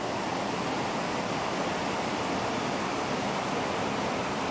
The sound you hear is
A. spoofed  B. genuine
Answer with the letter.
B